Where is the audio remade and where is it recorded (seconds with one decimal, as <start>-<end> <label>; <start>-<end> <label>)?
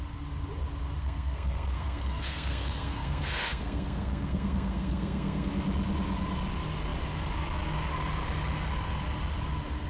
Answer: 0.0-1.0 recorded; 1.0-5.5 remade; 5.5-9.9 recorded